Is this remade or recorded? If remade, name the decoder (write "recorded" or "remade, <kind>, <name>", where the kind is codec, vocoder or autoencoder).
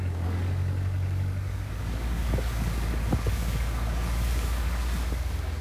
remade, codec, DAC